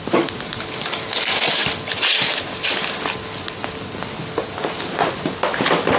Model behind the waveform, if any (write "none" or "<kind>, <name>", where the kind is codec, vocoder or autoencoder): none